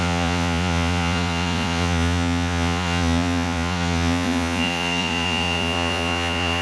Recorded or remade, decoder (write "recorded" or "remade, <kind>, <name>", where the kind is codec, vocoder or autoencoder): remade, vocoder, Vocos